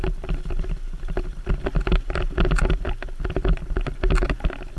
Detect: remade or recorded recorded